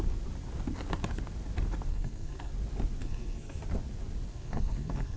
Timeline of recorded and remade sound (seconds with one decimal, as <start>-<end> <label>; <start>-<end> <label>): 0.0-1.9 recorded; 1.9-2.5 remade; 2.5-3.0 recorded; 3.0-3.6 remade; 3.6-4.3 recorded; 4.3-5.2 remade